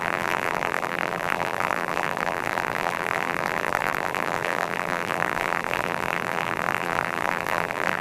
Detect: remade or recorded remade